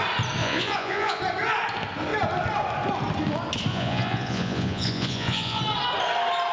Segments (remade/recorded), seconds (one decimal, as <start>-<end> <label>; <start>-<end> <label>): 0.0-0.4 recorded; 0.4-1.2 remade; 1.2-3.7 recorded; 3.7-5.6 remade; 5.6-6.5 recorded